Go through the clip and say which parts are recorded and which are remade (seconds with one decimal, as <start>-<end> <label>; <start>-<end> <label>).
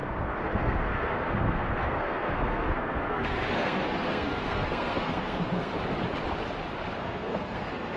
0.0-5.7 remade; 5.7-7.0 recorded; 7.0-8.0 remade